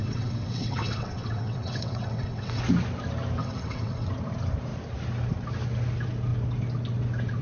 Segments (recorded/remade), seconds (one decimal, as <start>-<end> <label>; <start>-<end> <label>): 0.0-2.6 remade; 2.6-3.4 recorded; 3.4-4.1 remade; 4.1-7.4 recorded